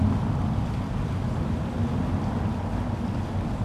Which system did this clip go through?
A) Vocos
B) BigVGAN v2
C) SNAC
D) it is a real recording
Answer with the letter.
D